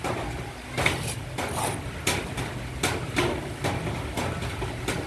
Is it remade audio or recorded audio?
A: remade